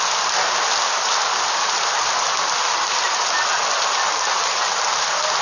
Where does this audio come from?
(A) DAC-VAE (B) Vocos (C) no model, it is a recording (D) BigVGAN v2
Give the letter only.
C